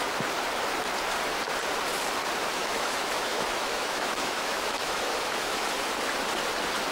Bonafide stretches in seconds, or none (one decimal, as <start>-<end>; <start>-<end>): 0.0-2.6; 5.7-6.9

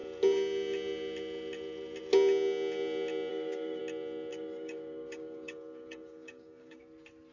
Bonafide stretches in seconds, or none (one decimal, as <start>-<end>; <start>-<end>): 0.0-3.3; 3.8-4.3; 6.8-7.3

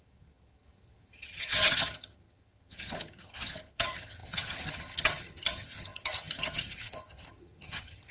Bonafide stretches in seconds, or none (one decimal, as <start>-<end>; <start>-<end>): none

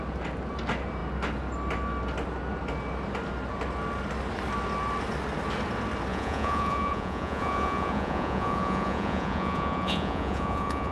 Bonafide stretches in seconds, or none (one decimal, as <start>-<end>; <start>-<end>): 0.0-6.1